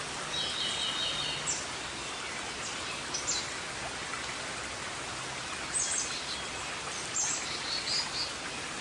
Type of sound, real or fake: real